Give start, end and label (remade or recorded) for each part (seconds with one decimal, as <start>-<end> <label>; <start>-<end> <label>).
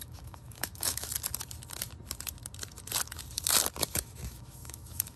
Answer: 0.0-1.1 remade; 1.1-3.8 recorded; 3.8-5.2 remade